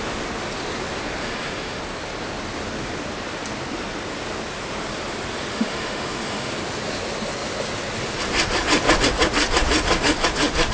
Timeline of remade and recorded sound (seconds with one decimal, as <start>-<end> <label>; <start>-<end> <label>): 0.0-1.2 recorded; 1.2-1.8 remade; 1.8-5.5 recorded; 5.5-6.5 remade; 6.5-10.7 recorded